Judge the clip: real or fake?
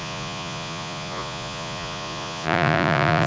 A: fake